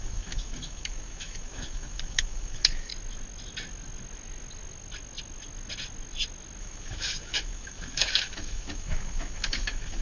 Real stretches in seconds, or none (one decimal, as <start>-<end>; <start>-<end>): 2.9-6.6